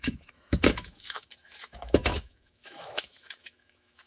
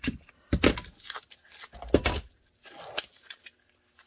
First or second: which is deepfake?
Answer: first